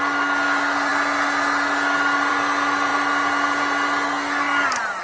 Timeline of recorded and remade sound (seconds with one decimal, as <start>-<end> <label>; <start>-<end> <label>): 0.0-5.0 recorded